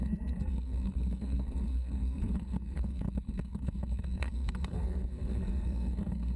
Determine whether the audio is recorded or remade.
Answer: remade